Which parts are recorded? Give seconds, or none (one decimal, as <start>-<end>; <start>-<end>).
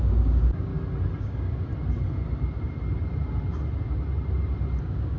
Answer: 0.7-1.2; 1.7-4.8